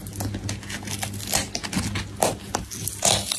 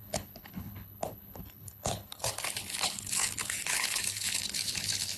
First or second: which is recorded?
first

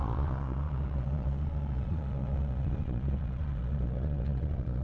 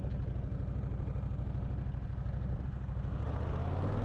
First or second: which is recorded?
second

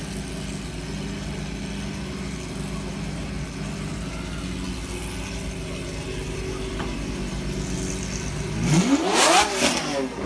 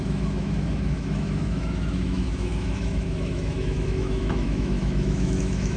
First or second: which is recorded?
first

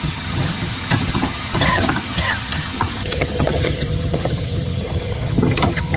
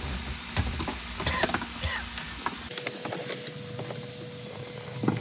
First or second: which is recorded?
second